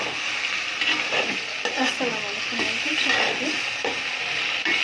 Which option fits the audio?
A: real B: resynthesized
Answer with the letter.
A